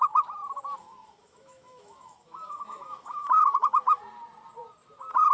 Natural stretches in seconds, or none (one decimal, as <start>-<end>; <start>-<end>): 0.0-0.8; 4.0-5.3